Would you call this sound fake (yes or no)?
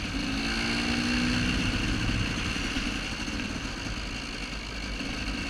no